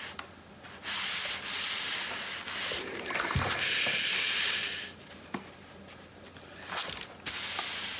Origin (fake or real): real